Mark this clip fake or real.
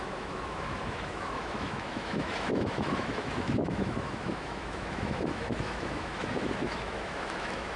fake